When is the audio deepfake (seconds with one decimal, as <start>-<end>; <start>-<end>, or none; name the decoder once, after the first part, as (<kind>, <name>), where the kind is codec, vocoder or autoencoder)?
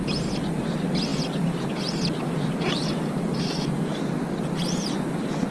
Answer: none